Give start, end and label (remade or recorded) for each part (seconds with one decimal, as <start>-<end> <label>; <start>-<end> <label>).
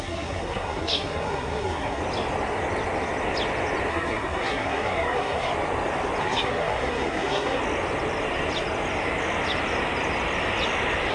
0.0-2.0 remade; 2.0-3.9 recorded; 3.9-5.5 remade; 5.5-6.2 recorded; 6.2-7.6 remade; 7.6-11.1 recorded